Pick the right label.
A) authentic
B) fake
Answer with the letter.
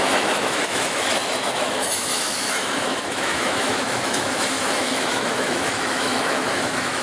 B